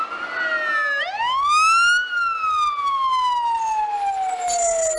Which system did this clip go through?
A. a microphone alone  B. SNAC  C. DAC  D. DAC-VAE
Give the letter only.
A